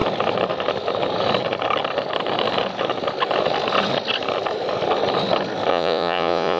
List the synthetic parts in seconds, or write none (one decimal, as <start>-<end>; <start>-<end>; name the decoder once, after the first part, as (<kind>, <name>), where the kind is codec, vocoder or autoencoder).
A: 5.7-6.6 (vocoder, Vocos)